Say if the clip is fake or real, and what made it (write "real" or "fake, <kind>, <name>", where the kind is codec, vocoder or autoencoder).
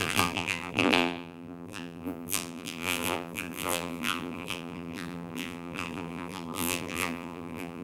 fake, vocoder, BigVGAN v2